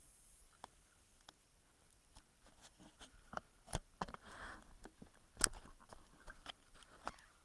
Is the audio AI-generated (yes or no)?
no